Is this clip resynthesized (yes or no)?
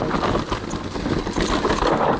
no